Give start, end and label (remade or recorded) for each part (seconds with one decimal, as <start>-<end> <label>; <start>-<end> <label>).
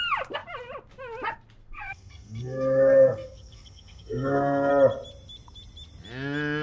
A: 0.0-1.6 recorded; 1.6-4.7 remade; 4.7-6.6 recorded